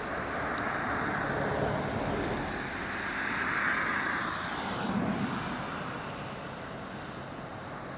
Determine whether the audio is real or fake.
real